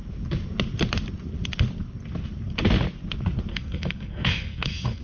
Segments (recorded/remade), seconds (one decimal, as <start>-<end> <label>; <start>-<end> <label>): 0.0-3.5 recorded; 3.5-5.0 remade